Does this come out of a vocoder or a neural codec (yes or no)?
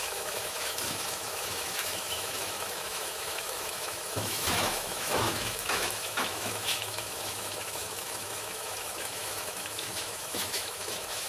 yes